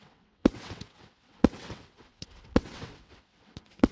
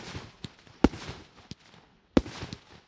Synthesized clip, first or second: first